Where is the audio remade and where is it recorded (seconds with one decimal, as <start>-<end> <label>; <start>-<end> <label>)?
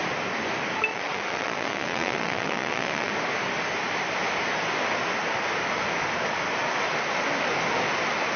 0.0-0.9 recorded; 0.9-3.1 remade; 3.1-8.4 recorded